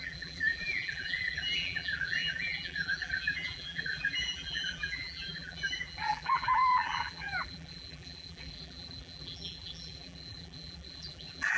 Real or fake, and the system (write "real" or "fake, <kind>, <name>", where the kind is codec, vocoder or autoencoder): fake, vocoder, BigVGAN v2